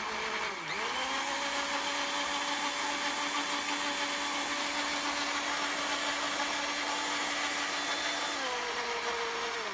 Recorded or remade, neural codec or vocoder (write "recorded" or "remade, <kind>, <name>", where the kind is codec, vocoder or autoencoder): recorded